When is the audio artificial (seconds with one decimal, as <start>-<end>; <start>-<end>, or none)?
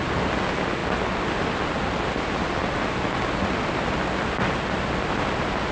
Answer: none